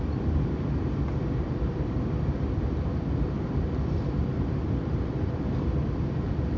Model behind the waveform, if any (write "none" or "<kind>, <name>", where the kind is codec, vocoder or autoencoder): vocoder, BigVGAN v2